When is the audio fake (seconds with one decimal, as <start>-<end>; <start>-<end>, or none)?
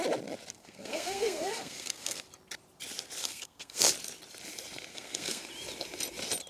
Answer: 0.6-2.2; 3.2-3.9; 4.9-5.5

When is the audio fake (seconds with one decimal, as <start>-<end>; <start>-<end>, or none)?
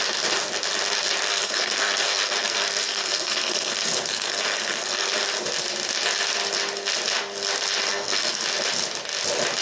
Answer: 1.3-5.1; 7.9-8.4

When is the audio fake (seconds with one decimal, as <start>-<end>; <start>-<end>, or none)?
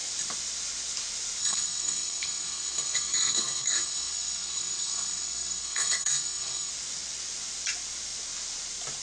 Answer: 1.4-6.7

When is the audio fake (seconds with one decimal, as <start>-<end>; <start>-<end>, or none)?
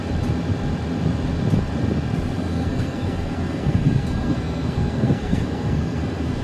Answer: 2.5-6.0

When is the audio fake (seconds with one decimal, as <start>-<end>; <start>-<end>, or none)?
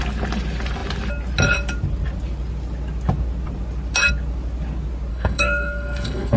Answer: 5.1-6.4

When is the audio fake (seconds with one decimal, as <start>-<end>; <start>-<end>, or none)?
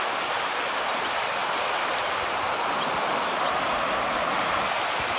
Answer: none